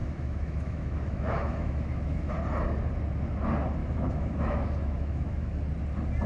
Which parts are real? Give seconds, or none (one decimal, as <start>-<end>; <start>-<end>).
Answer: 2.3-3.8; 5.6-6.3